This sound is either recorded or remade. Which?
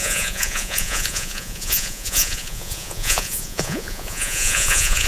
remade